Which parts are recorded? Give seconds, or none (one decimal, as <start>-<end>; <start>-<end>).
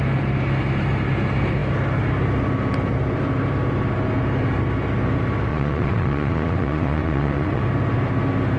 0.0-5.5; 7.6-8.6